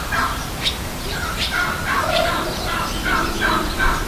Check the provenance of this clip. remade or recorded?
remade